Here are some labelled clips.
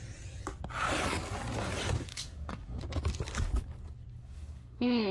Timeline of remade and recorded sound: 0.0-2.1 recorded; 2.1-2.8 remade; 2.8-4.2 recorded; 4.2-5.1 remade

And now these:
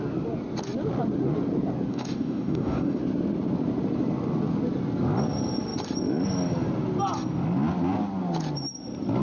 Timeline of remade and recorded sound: 0.0-1.9 recorded; 1.9-3.0 remade; 3.0-9.2 recorded

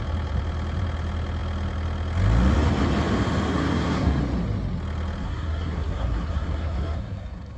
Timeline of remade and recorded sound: 0.0-3.5 recorded; 3.5-4.2 remade; 4.2-5.2 recorded; 5.2-7.6 remade

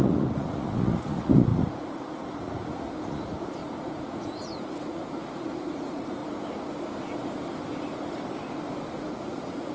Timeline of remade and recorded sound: 0.0-6.2 remade; 6.2-8.9 recorded; 8.9-9.7 remade

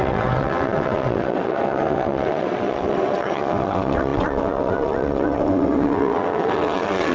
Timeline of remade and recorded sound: 0.0-7.1 remade

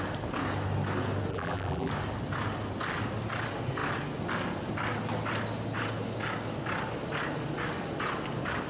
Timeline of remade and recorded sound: 0.0-1.3 recorded; 1.3-1.9 remade; 1.9-8.7 recorded

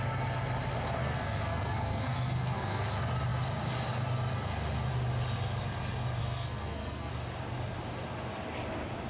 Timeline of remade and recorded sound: 0.0-1.0 recorded; 1.0-2.9 remade; 2.9-6.2 recorded; 6.2-7.1 remade; 7.1-9.1 recorded